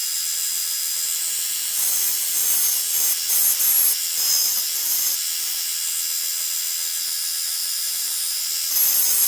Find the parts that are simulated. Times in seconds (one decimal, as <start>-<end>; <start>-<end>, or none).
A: 0.0-2.8; 4.4-5.2; 7.6-8.4